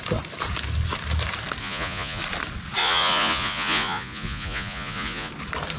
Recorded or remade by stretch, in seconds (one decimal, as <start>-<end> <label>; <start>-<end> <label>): 0.0-1.6 recorded; 1.6-2.2 remade; 2.2-2.8 recorded; 2.8-5.3 remade; 5.3-5.8 recorded